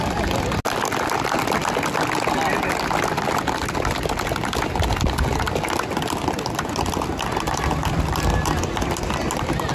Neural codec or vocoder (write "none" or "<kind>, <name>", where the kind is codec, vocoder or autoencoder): none